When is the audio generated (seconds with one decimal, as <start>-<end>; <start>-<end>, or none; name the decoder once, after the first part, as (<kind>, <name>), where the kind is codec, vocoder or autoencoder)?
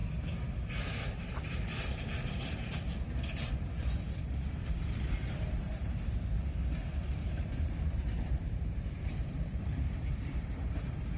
1.8-2.9 (vocoder, BigVGAN v2); 4.3-11.2